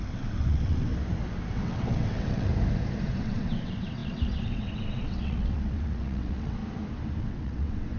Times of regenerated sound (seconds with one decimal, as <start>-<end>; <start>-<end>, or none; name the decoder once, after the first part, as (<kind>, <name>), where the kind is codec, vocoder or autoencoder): 0.0-0.9 (vocoder, WaveNeXt); 1.5-2.5; 3.2-6.6; 7.2-8.0